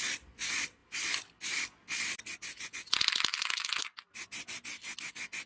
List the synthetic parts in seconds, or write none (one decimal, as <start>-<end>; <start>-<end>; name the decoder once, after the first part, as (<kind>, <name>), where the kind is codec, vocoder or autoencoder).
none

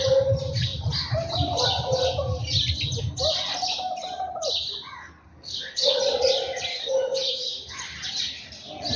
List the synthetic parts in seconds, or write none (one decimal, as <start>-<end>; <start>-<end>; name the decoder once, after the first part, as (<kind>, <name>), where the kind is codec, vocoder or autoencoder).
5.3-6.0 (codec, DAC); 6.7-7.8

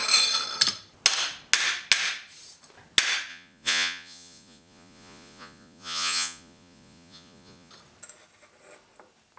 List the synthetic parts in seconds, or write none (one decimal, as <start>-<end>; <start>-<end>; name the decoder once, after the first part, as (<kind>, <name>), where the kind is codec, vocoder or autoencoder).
3.3-7.7 (vocoder, Vocos)

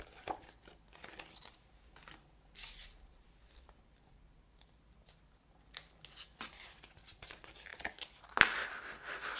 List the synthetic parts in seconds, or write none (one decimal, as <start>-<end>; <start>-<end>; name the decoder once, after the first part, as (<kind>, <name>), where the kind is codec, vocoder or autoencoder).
none

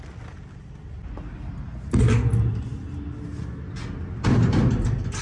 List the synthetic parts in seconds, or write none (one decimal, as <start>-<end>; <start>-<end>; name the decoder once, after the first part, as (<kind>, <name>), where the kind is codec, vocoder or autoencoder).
none